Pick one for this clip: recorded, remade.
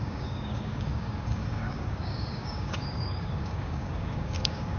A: remade